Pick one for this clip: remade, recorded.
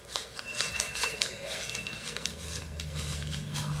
remade